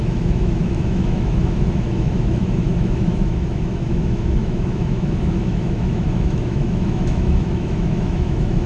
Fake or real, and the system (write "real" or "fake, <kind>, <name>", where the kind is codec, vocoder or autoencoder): fake, autoencoder, DAC-VAE